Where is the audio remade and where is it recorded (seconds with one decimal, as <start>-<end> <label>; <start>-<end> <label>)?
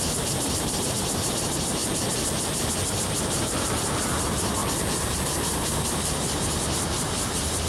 0.0-1.8 remade; 1.8-2.9 recorded; 2.9-4.6 remade; 4.6-5.4 recorded; 5.4-7.7 remade